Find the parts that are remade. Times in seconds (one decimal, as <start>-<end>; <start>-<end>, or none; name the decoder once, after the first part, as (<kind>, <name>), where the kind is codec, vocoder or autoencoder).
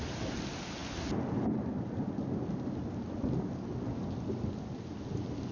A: none